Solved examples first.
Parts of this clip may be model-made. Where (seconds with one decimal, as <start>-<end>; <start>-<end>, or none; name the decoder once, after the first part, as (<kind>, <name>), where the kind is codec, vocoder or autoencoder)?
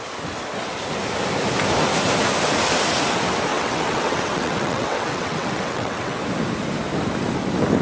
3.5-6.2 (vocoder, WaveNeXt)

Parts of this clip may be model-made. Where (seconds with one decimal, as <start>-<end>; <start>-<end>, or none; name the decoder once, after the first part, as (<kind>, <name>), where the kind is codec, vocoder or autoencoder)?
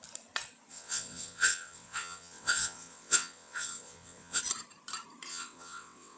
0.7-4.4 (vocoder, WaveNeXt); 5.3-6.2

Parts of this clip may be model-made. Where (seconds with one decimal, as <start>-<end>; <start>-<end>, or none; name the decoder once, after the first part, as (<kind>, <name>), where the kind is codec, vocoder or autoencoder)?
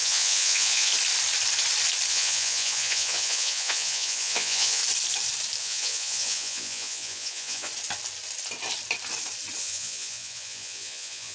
0.0-0.9 (vocoder, Vocos); 2.1-4.8; 5.6-7.7; 9.6-11.3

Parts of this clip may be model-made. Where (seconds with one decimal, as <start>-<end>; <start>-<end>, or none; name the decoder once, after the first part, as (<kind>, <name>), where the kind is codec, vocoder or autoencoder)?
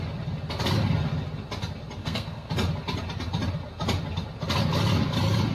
2.0-2.5 (codec, SNAC)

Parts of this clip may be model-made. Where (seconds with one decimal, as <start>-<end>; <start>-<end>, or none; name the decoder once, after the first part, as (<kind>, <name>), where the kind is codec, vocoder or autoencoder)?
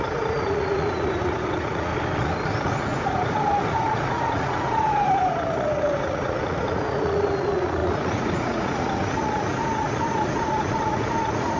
0.0-1.9 (vocoder, Vocos); 2.6-11.6